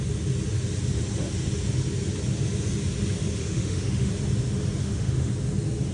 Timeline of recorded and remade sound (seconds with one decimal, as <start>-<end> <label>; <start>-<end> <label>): 0.0-3.4 recorded; 3.4-4.1 remade; 4.1-4.8 recorded; 4.8-5.3 remade; 5.3-5.9 recorded